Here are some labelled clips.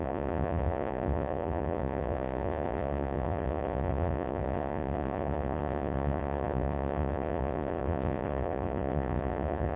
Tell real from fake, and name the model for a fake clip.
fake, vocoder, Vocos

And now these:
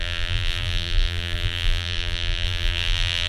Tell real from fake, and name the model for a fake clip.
fake, vocoder, BigVGAN v2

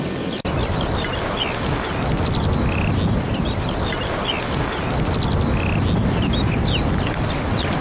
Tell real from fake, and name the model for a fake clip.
real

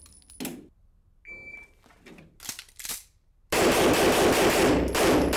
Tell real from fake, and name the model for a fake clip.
real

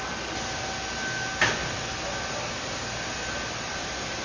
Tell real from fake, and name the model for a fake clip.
real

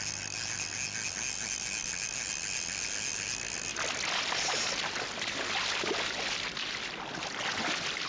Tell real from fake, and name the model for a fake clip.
real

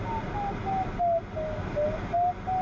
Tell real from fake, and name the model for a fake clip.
real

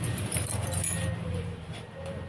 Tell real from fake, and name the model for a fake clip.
fake, vocoder, BigVGAN v2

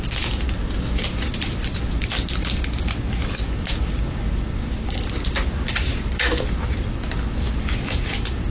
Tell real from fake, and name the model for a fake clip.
real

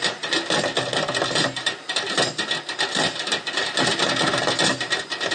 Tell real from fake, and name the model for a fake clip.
real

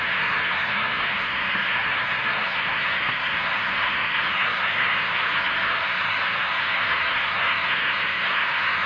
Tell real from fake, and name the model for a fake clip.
fake, codec, SNAC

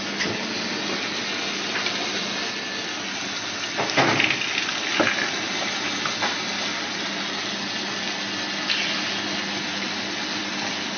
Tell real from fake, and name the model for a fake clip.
real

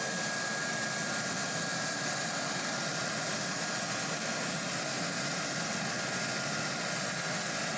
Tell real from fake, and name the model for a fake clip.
real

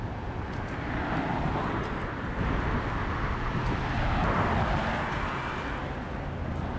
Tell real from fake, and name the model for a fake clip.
real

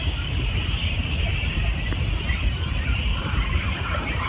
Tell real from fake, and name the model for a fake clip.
fake, vocoder, BigVGAN v2